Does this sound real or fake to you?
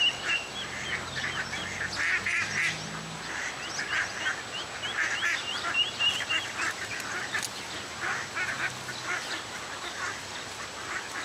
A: real